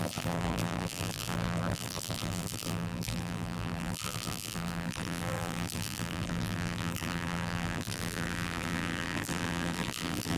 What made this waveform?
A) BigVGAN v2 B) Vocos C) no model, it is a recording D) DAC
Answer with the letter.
A